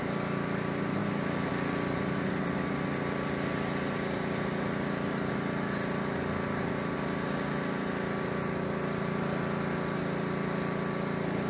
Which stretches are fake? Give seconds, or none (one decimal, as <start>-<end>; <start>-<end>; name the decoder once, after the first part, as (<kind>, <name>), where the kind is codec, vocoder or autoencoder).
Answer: none